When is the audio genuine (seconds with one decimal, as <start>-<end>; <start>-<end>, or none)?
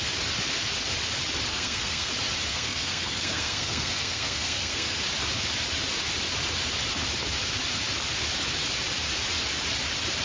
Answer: 0.0-1.5; 2.1-2.5; 5.0-10.2